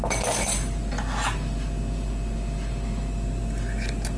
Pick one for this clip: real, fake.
real